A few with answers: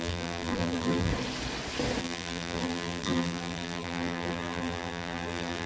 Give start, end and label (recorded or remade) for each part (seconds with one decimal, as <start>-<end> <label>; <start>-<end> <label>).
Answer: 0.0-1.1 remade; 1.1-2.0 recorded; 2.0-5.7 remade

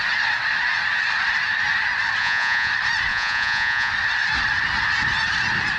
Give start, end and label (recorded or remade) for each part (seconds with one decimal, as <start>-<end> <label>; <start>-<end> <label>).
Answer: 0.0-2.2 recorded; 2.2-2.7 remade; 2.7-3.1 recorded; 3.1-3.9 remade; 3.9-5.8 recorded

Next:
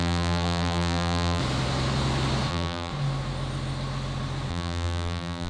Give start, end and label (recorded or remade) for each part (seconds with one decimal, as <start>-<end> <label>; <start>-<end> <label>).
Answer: 0.0-1.4 remade; 1.4-2.5 recorded; 2.5-2.9 remade; 2.9-4.5 recorded; 4.5-5.5 remade

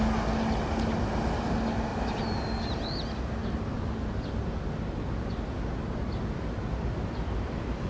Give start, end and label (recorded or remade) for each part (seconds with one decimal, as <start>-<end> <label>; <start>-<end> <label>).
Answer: 0.0-1.9 recorded; 1.9-3.0 remade; 3.0-3.4 recorded; 3.4-4.0 remade; 4.0-7.9 recorded

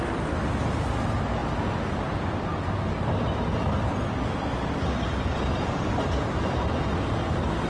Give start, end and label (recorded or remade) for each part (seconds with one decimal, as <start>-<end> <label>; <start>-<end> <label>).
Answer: 0.0-7.7 recorded

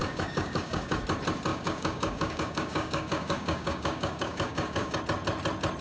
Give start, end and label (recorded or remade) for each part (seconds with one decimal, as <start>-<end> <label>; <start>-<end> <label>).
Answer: 0.0-1.0 remade; 1.0-1.5 recorded; 1.5-5.0 remade; 5.0-5.8 recorded